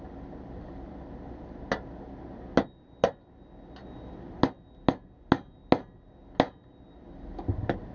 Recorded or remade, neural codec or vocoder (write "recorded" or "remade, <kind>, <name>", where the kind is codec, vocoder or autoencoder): recorded